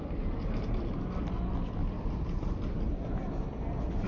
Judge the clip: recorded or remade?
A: recorded